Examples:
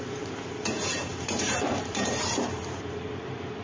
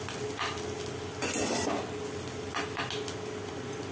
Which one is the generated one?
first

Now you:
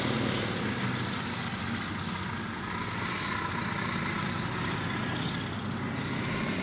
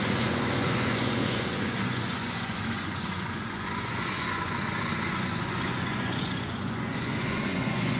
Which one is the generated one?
second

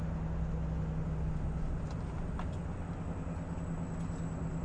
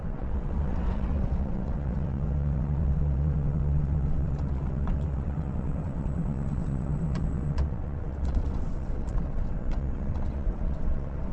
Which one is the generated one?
second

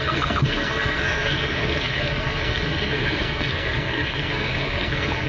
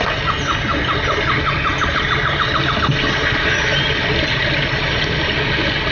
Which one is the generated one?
first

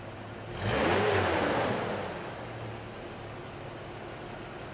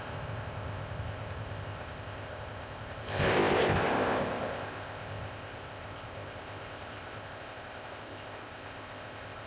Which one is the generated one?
second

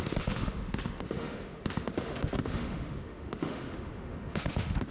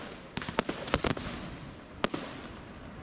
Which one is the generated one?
first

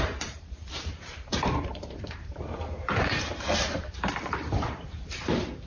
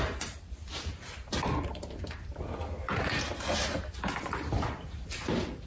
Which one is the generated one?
first